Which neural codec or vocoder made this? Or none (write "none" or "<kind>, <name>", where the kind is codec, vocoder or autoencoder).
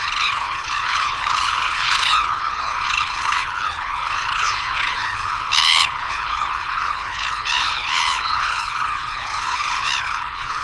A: codec, HILCodec